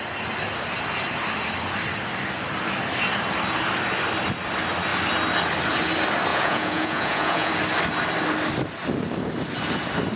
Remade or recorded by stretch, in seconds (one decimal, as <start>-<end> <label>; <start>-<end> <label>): 0.0-6.3 recorded; 6.3-7.5 remade; 7.5-10.2 recorded